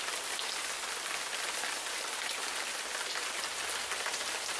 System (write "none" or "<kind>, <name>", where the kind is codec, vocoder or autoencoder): none